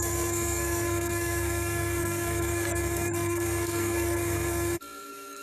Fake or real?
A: fake